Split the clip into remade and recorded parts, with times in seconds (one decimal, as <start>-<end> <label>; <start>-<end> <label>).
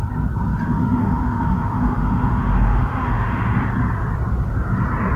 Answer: 0.0-0.6 recorded; 0.6-3.7 remade; 3.7-5.2 recorded